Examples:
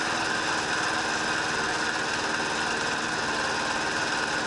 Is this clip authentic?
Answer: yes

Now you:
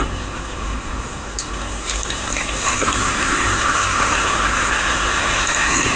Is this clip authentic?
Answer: no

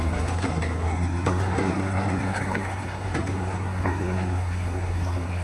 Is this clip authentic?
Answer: no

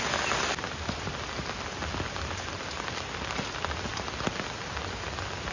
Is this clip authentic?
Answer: yes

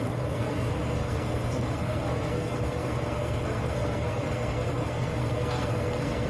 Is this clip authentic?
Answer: no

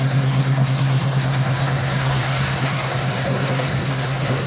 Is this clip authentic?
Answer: no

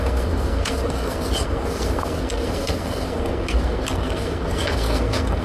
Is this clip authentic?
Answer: no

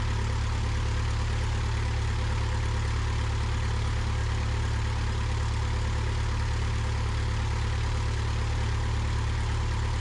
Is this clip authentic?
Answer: yes